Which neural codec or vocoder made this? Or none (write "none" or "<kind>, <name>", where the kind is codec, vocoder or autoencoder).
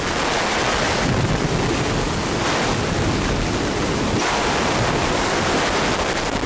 none